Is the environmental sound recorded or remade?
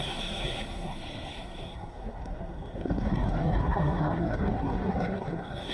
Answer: remade